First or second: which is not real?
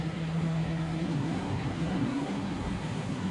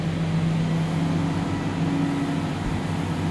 first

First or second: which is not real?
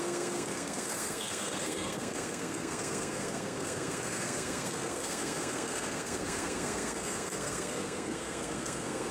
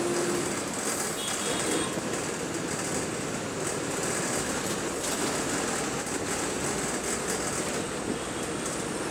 first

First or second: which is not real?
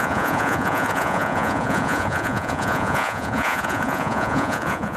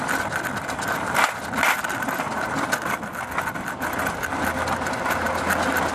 first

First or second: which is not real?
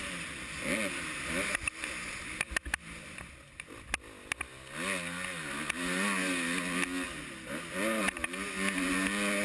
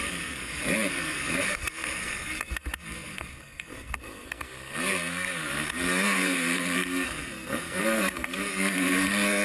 second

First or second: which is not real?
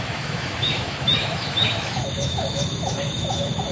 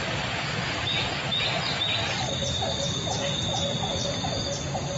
first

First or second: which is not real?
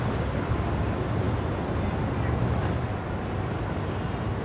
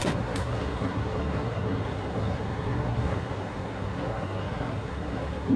second